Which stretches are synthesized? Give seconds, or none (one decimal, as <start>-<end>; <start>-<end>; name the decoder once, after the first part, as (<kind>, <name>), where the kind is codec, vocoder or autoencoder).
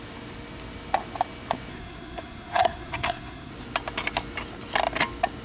1.7-3.5 (codec, SNAC)